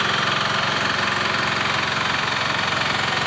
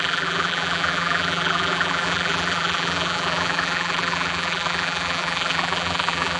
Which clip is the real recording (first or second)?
first